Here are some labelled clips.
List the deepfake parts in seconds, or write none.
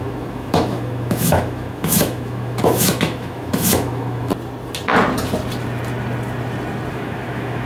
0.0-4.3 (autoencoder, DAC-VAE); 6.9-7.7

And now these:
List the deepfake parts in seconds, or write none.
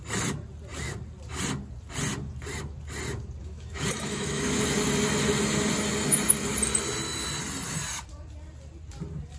3.4-4.6 (autoencoder, DAC-VAE)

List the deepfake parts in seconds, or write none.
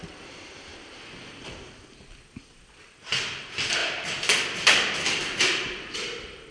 none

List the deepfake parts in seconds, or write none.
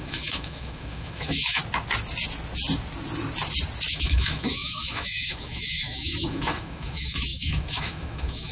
0.0-1.6 (autoencoder, DAC-VAE); 3.9-8.5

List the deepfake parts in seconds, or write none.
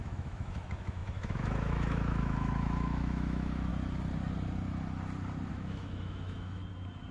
0.0-3.7 (autoencoder, DAC-VAE); 5.5-6.6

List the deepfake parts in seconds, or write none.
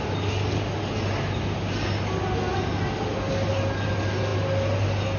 none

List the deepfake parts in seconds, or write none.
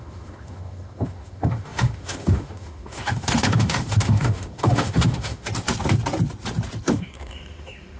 0.0-5.5 (autoencoder, DAC-VAE); 6.9-8.0